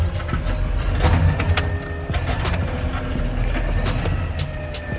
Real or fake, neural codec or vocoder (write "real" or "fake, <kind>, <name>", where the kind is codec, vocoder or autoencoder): real